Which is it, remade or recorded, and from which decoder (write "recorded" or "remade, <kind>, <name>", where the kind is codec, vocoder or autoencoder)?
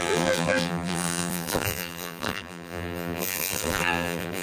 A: remade, vocoder, BigVGAN v2